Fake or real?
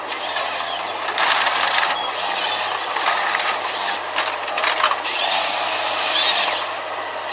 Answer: real